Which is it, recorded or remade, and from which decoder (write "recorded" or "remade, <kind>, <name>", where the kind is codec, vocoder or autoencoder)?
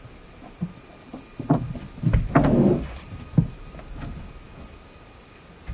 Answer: recorded